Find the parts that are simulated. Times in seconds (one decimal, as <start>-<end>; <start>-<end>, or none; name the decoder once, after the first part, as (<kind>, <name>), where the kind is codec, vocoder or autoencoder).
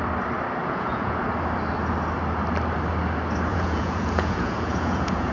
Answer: 0.6-1.2 (vocoder, Vocos); 3.5-5.3